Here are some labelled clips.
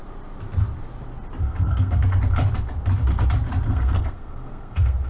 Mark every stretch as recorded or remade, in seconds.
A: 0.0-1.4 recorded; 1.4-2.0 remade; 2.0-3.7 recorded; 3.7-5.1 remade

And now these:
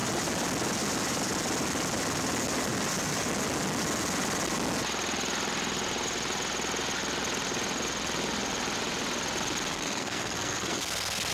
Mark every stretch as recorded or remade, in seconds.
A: 0.0-9.7 recorded; 9.7-11.3 remade

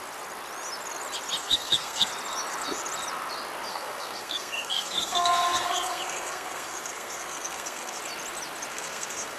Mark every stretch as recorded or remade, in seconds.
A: 0.0-1.4 recorded; 1.4-2.1 remade; 2.1-3.7 recorded; 3.7-8.0 remade; 8.0-8.7 recorded; 8.7-9.4 remade

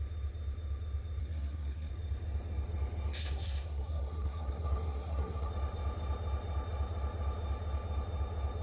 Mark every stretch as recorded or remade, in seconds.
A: 0.0-1.2 recorded; 1.2-1.9 remade; 1.9-3.1 recorded; 3.1-5.5 remade; 5.5-8.6 recorded

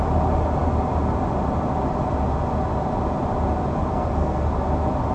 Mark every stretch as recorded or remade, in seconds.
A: 0.0-3.9 recorded; 3.9-4.5 remade; 4.5-5.1 recorded